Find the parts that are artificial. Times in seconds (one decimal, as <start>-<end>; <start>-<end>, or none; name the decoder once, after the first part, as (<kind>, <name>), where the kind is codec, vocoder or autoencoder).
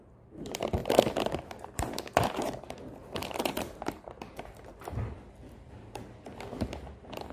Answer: 3.2-5.7 (vocoder, BigVGAN v2)